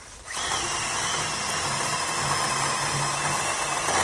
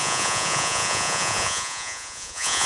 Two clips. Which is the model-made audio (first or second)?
second